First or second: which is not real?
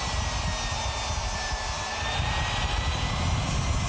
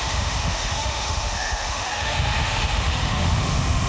second